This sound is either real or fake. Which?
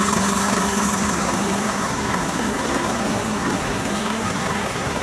fake